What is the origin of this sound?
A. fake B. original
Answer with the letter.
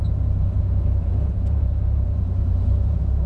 A